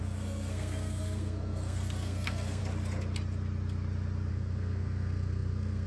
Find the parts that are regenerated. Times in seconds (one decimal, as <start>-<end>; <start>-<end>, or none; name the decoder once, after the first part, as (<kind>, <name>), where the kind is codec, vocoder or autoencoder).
0.0-2.6 (codec, SNAC); 4.3-5.9